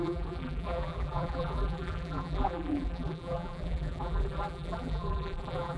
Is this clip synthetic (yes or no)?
yes